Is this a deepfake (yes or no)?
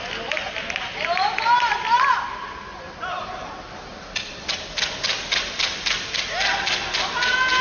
no